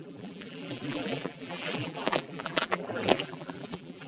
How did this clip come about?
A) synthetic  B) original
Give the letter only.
A